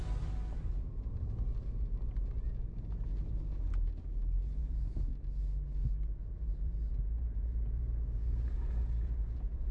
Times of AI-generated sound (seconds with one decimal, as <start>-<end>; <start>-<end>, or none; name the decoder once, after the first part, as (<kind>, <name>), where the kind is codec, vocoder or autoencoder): 4.6-5.1 (vocoder, Vocos); 6.2-9.7